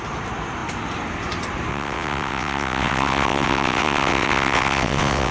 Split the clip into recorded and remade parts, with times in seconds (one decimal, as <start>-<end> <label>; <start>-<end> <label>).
0.0-1.7 recorded; 1.7-5.3 remade

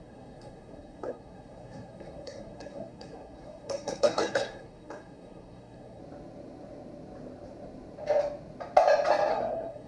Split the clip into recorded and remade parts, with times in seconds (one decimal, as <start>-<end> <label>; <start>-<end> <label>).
0.0-6.0 remade; 6.0-9.3 recorded; 9.3-9.9 remade